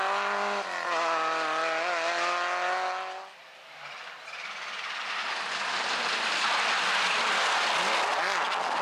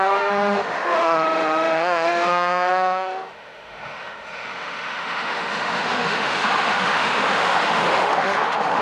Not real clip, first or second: second